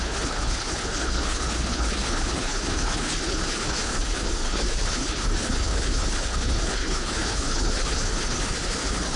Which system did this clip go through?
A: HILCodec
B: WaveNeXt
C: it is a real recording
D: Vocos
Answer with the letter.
A